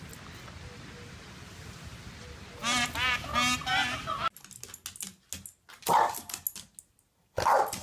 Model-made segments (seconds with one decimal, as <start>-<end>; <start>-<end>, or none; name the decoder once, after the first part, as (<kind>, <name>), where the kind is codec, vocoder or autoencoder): none